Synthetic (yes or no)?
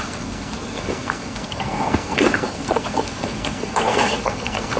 yes